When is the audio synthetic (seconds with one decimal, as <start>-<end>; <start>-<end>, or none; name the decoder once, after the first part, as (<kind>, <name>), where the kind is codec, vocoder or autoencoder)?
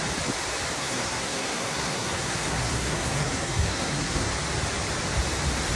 0.8-4.3 (codec, SNAC)